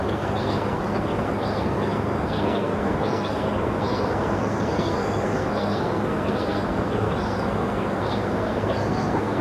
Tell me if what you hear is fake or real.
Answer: fake